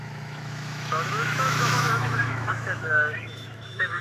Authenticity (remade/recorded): remade